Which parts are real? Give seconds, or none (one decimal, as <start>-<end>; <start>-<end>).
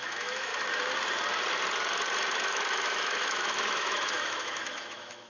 0.5-2.3